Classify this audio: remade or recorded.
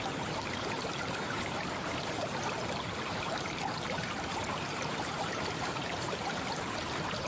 remade